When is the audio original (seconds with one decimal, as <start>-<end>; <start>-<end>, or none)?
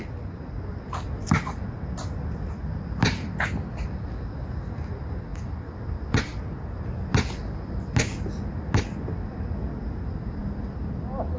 0.0-11.4